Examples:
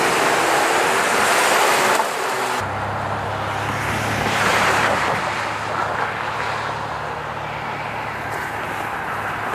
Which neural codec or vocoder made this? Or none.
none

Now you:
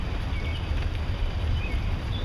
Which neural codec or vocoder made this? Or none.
vocoder, BigVGAN v2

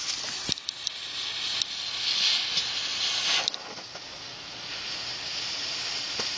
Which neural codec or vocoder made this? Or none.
none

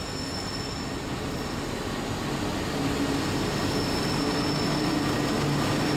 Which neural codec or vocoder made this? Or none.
none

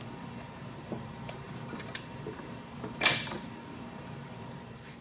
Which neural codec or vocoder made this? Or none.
vocoder, BigVGAN v2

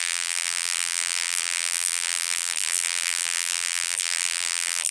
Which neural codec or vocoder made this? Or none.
vocoder, BigVGAN v2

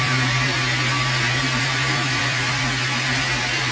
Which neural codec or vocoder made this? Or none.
vocoder, BigVGAN v2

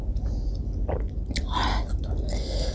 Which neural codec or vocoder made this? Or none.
none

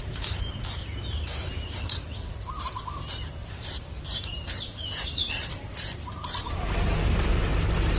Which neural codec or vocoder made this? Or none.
vocoder, BigVGAN v2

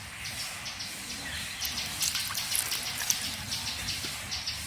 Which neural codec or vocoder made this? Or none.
none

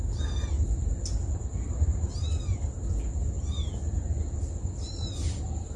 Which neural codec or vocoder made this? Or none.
none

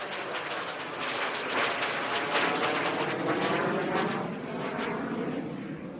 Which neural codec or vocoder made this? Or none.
none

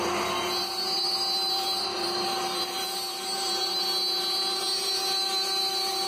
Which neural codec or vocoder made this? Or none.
vocoder, BigVGAN v2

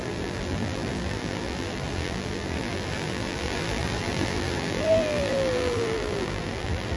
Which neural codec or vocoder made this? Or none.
vocoder, BigVGAN v2